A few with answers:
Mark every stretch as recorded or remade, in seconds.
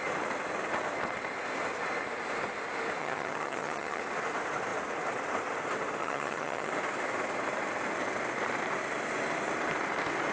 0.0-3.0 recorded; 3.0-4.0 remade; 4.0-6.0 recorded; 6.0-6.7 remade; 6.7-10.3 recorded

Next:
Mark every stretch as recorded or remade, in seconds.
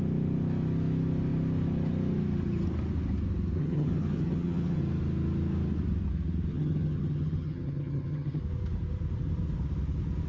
0.0-3.6 recorded; 3.6-4.8 remade; 4.8-6.5 recorded; 6.5-8.4 remade; 8.4-10.3 recorded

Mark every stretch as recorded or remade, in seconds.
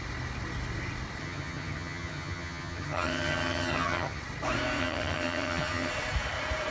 0.0-1.2 recorded; 1.2-4.2 remade; 4.2-4.8 recorded; 4.8-5.9 remade; 5.9-6.7 recorded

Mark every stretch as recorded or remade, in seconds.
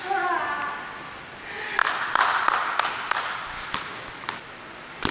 0.0-5.1 recorded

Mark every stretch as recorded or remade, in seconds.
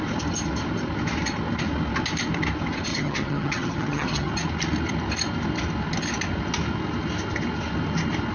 0.0-2.9 recorded; 2.9-4.3 remade; 4.3-8.3 recorded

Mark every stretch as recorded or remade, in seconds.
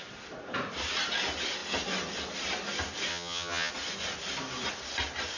0.0-3.1 recorded; 3.1-3.7 remade; 3.7-5.4 recorded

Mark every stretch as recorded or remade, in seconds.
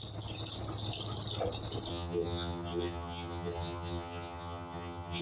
0.0-1.9 recorded; 1.9-5.2 remade